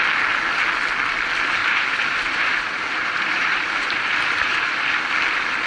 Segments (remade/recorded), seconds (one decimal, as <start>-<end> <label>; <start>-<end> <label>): 0.0-1.6 recorded; 1.6-5.0 remade; 5.0-5.7 recorded